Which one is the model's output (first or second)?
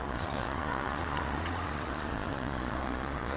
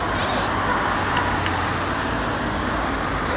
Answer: first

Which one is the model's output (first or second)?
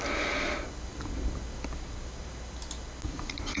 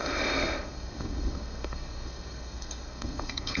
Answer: second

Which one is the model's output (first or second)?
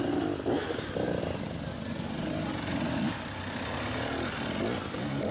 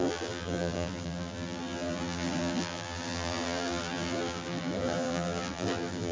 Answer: second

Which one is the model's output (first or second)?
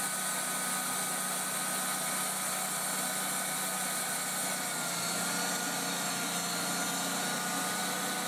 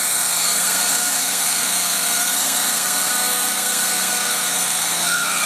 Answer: second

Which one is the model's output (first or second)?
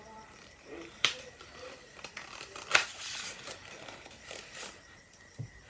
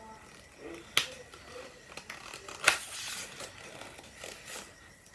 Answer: first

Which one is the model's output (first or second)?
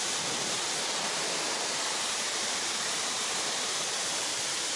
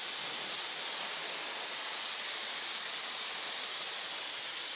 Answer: first